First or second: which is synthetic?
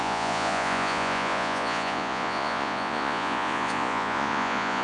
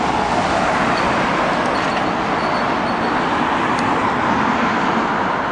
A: first